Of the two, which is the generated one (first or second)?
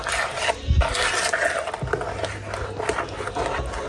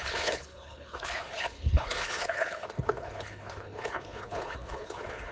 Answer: second